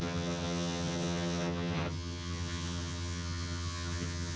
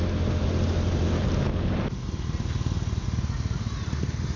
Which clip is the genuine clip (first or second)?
second